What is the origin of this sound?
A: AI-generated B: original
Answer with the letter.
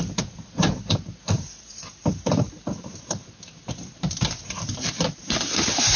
A